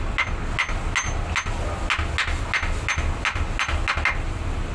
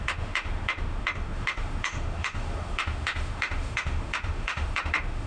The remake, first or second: second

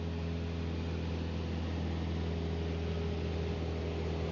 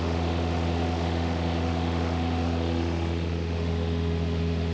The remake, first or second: second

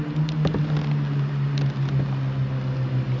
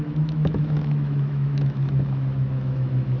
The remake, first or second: second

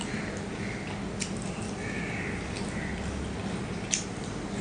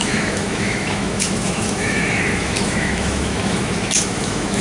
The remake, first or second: second